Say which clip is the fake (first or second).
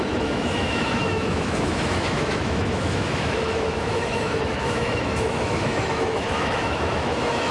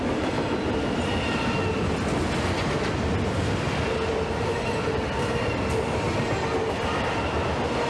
first